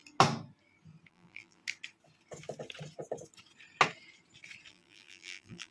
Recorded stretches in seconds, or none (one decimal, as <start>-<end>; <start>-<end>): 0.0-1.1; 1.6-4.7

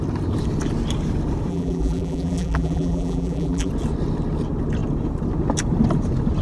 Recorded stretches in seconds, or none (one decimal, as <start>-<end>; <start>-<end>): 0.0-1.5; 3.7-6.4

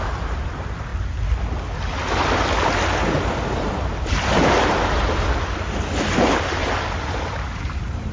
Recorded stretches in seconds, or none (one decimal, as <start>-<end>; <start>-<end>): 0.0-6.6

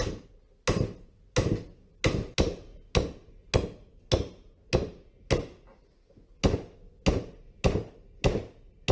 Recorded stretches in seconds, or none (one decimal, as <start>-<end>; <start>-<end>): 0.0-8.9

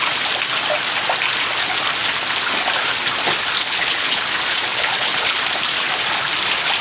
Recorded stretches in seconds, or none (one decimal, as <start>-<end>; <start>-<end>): 0.0-3.6; 4.2-4.7; 5.4-6.8

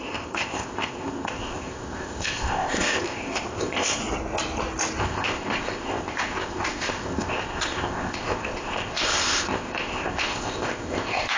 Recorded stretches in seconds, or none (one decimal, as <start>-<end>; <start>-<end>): 4.0-5.0

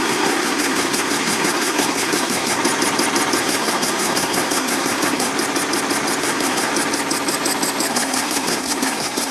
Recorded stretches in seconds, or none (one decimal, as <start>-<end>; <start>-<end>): 2.6-3.4; 5.3-6.2; 6.7-7.9

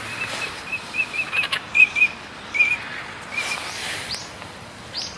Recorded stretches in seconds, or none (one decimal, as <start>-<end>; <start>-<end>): 0.7-3.4